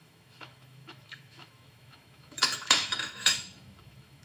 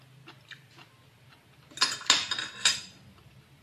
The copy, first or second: first